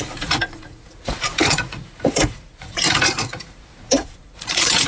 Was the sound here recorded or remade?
remade